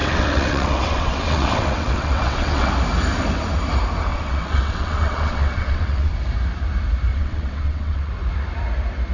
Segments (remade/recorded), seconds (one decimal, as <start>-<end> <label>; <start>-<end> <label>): 0.0-2.7 remade; 2.7-4.1 recorded; 4.1-6.1 remade; 6.1-7.1 recorded; 7.1-8.1 remade; 8.1-9.1 recorded